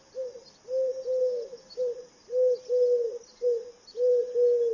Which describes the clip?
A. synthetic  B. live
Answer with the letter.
B